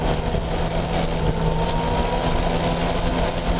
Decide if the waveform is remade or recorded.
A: recorded